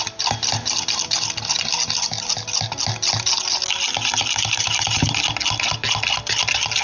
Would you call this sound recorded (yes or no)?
yes